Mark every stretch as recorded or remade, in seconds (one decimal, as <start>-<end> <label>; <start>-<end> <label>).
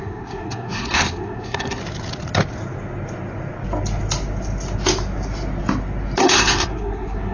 0.0-1.8 remade; 1.8-6.2 recorded; 6.2-7.3 remade